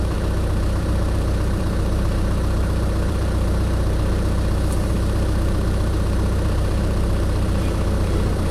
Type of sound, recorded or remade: remade